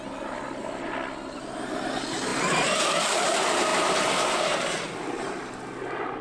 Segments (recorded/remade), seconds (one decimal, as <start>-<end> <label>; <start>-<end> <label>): 0.0-6.2 recorded